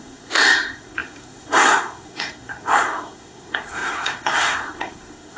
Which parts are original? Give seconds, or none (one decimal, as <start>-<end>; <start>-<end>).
none